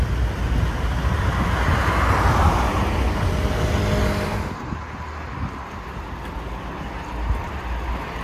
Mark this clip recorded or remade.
recorded